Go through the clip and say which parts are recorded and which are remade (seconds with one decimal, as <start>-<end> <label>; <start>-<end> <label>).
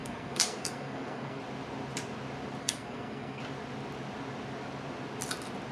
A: 0.0-1.4 remade; 1.4-2.6 recorded; 2.6-3.4 remade; 3.4-5.7 recorded